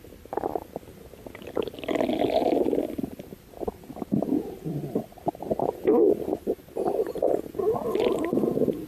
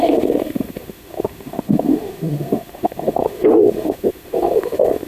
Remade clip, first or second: second